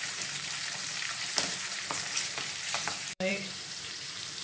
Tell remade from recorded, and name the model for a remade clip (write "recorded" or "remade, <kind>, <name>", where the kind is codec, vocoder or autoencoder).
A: remade, vocoder, BigVGAN v2